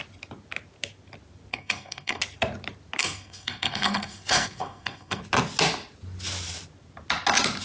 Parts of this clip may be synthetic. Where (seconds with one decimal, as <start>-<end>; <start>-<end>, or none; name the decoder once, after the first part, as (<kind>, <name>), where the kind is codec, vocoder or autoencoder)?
1.5-2.2 (codec, SNAC); 3.0-5.2